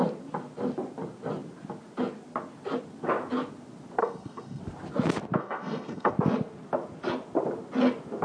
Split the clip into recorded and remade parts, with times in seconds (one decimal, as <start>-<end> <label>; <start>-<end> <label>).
0.0-4.0 recorded; 4.0-4.6 remade; 4.6-5.4 recorded; 5.4-6.1 remade; 6.1-8.2 recorded